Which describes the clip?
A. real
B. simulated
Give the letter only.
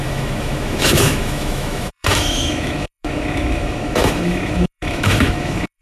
B